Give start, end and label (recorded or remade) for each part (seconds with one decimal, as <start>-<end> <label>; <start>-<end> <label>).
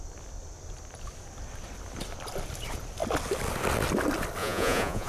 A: 0.0-4.4 recorded; 4.4-5.1 remade